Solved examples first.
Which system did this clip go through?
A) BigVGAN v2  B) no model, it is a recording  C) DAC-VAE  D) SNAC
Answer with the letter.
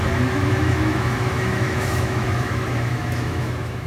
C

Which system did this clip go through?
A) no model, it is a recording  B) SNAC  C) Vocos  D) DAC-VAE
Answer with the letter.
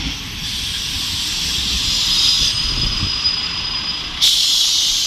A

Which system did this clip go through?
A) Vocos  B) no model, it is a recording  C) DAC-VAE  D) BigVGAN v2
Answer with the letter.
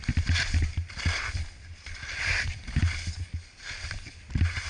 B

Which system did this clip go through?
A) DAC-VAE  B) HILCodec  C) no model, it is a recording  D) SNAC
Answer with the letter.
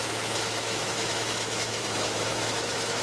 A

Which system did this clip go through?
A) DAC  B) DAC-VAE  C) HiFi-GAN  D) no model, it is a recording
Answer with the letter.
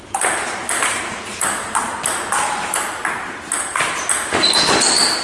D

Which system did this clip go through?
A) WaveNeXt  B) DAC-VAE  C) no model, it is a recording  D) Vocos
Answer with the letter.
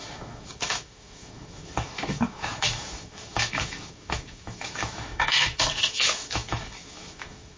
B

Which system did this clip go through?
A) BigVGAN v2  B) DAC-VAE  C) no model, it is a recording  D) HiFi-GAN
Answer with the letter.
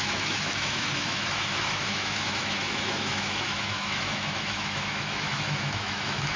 B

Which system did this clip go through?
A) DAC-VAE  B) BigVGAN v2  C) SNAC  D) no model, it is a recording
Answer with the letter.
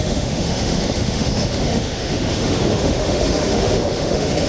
A